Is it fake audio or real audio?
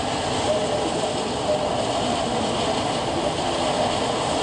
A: real